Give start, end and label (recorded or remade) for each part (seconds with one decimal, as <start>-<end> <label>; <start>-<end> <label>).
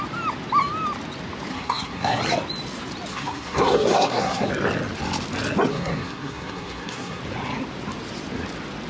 0.0-1.5 recorded; 1.5-2.2 remade; 2.2-3.1 recorded; 3.1-4.5 remade; 4.5-5.7 recorded; 5.7-7.2 remade; 7.2-8.9 recorded